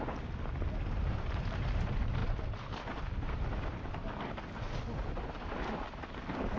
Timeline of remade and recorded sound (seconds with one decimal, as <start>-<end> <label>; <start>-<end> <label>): 0.0-6.6 recorded